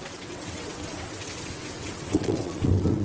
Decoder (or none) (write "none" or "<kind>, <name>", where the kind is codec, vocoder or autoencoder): vocoder, WaveNeXt